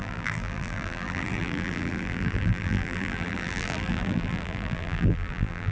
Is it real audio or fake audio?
fake